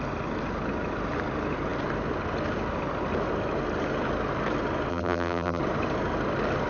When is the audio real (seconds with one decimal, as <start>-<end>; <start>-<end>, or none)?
0.0-4.9; 5.6-6.7